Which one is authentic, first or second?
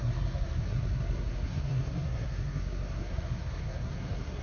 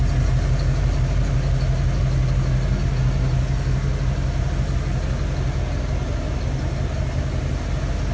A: second